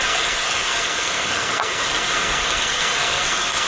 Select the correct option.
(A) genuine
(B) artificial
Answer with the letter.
B